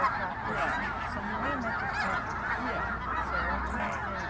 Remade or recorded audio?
recorded